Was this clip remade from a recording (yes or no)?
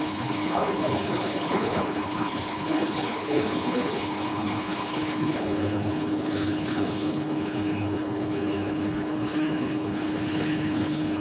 yes